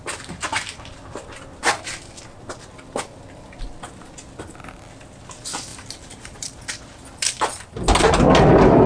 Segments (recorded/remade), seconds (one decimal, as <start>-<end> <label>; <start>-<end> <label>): 0.0-5.7 recorded; 5.7-6.6 remade; 6.6-8.9 recorded